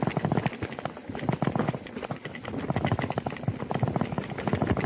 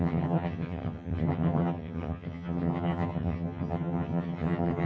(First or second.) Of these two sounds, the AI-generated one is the second